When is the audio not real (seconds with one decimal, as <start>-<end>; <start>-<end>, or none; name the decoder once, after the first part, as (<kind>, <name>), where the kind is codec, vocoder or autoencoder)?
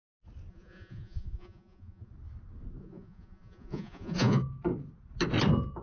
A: 0.5-2.1 (vocoder, Vocos); 2.8-4.4